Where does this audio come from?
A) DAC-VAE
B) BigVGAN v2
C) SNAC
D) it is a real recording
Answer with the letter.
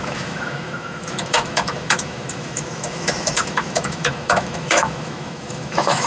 A